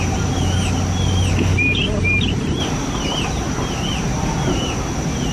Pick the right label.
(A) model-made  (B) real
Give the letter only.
B